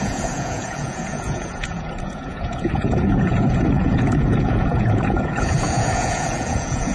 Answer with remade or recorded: remade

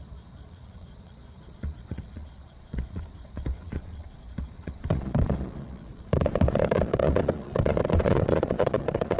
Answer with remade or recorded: remade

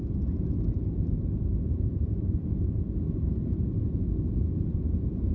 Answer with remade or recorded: remade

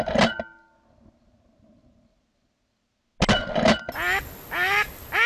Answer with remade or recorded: recorded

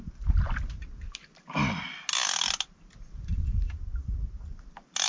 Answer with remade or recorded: recorded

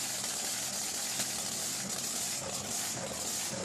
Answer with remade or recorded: recorded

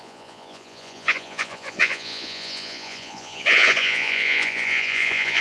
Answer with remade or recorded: remade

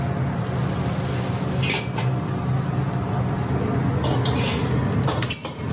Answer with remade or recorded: recorded